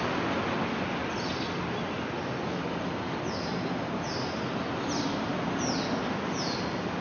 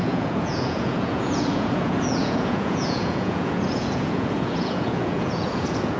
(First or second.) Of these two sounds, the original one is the first